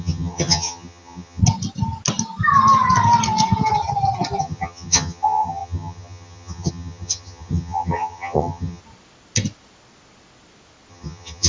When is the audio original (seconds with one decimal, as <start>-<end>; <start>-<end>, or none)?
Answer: 1.4-4.4; 8.8-10.9